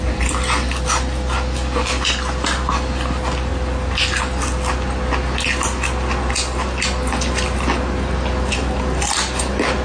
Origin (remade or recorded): recorded